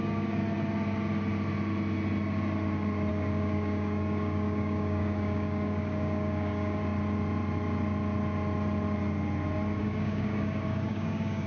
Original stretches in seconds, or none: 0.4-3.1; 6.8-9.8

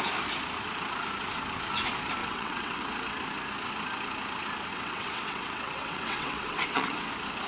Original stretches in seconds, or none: 0.0-2.2; 2.8-4.7; 7.1-7.5

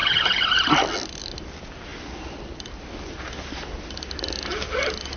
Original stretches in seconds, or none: 0.0-5.2

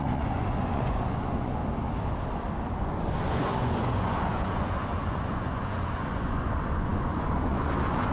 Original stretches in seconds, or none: 1.6-2.7

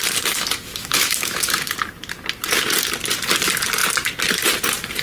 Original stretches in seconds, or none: 0.0-0.7; 1.5-5.0